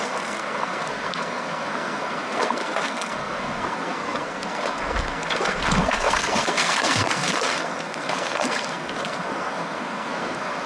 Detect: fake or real fake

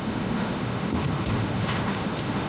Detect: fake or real fake